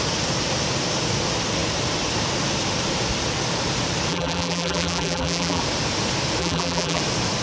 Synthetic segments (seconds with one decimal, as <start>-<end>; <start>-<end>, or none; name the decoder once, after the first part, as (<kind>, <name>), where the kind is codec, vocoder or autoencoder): 4.1-5.6 (vocoder, BigVGAN v2); 6.4-7.0